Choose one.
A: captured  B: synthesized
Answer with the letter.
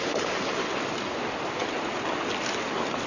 A